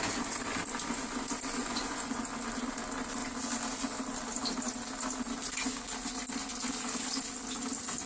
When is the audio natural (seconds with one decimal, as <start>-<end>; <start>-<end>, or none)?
0.0-1.6; 2.2-8.1